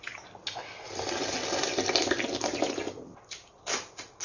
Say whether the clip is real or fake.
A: real